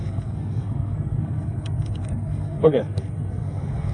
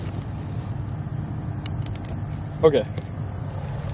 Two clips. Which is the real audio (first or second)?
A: second